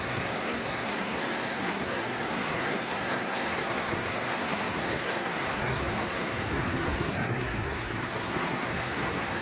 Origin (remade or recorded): remade